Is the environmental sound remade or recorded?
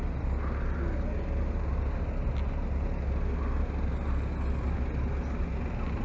recorded